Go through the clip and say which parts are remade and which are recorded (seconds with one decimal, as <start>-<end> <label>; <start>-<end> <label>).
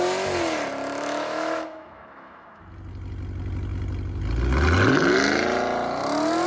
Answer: 0.0-0.9 recorded; 0.9-2.6 remade; 2.6-6.5 recorded